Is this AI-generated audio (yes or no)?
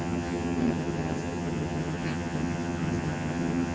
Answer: yes